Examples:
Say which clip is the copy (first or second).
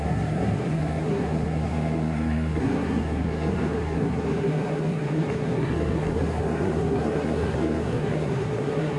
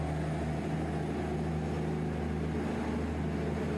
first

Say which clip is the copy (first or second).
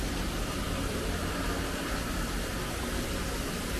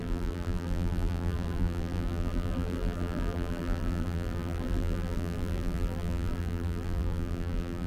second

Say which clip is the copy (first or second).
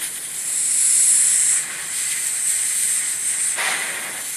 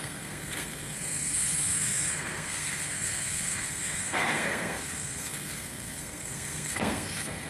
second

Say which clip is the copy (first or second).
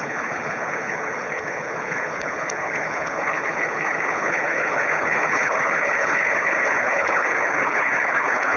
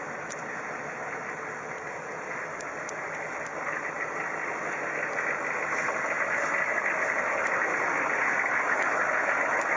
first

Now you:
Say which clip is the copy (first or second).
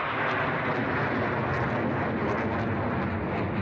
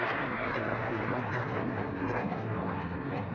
second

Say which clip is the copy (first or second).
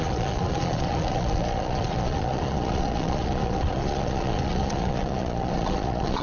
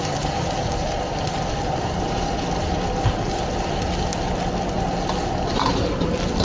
first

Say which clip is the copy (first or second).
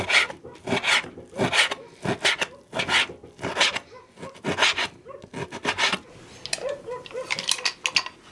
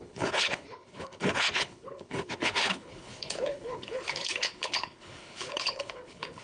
second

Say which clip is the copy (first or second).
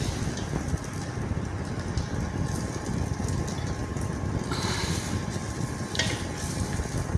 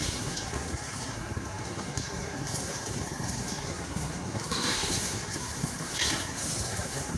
second